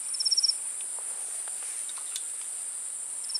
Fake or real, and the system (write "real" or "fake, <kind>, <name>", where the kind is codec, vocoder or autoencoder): real